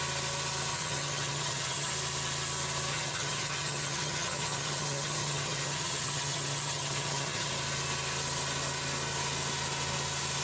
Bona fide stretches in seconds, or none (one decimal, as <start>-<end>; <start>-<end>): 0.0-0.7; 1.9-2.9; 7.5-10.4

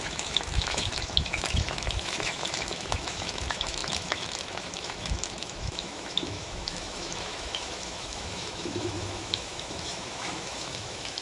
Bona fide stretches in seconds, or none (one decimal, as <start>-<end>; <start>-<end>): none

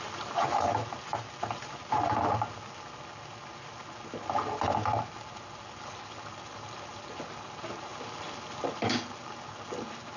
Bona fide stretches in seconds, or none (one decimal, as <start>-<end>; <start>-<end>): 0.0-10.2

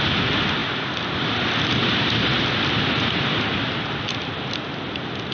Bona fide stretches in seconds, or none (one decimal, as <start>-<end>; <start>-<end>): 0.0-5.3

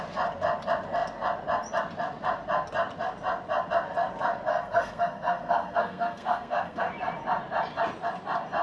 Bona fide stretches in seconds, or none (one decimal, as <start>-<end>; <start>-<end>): 0.0-4.5; 6.9-8.6